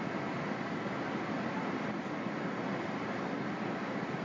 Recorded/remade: recorded